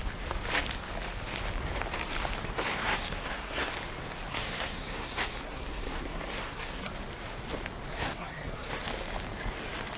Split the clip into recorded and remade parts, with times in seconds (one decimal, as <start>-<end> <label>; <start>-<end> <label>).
0.0-2.7 recorded; 2.7-3.7 remade; 3.7-4.3 recorded; 4.3-6.9 remade; 6.9-7.9 recorded; 7.9-8.7 remade; 8.7-10.0 recorded